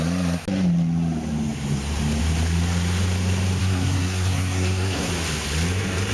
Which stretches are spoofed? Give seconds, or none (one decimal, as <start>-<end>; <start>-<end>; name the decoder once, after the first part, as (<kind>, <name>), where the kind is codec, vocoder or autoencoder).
3.6-5.1 (codec, SNAC)